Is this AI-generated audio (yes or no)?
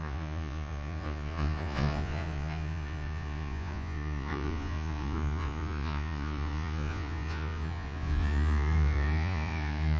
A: yes